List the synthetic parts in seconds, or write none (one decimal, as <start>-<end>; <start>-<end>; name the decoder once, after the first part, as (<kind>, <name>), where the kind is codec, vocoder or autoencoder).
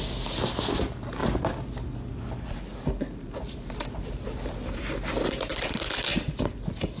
1.2-5.4 (vocoder, BigVGAN v2)